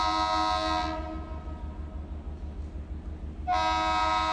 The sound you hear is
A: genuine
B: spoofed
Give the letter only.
A